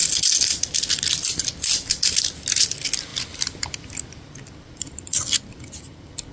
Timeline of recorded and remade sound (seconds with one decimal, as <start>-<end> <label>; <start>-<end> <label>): 0.0-6.3 recorded

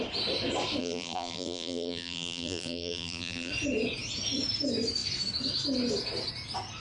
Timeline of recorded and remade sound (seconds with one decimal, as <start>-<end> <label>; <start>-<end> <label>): 0.0-0.8 recorded; 0.8-3.5 remade; 3.5-6.8 recorded

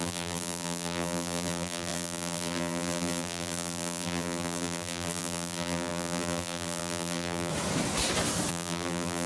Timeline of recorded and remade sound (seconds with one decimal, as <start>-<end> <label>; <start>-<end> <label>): 0.0-7.5 remade; 7.5-8.5 recorded; 8.5-9.3 remade